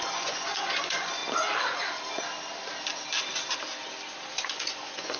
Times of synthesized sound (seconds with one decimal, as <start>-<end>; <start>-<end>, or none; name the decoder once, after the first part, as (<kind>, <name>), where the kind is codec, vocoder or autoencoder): 0.0-1.2 (vocoder, Vocos); 4.3-5.2